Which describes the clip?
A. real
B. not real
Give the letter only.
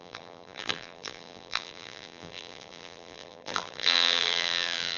B